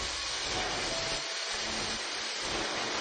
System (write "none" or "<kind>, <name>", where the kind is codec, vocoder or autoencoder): none